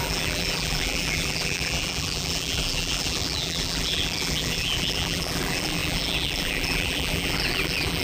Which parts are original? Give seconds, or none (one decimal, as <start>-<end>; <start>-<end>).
none